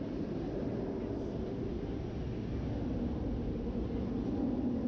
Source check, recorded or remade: recorded